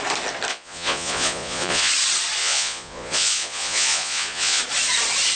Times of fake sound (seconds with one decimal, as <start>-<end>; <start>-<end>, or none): 0.5-1.9; 2.4-4.6